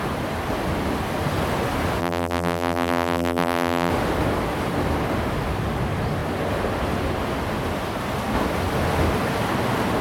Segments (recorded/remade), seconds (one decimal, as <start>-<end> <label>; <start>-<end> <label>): 0.0-2.0 recorded; 2.0-3.9 remade; 3.9-10.0 recorded